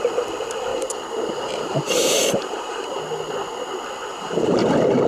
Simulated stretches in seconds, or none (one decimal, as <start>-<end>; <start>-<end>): 0.7-3.0; 4.1-4.6